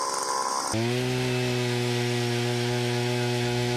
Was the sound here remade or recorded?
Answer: recorded